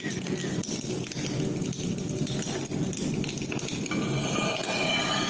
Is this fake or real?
real